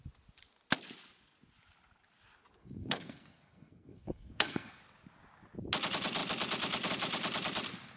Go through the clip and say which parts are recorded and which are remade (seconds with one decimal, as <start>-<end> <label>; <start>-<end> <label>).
0.0-2.6 recorded; 2.6-4.8 remade; 4.8-8.0 recorded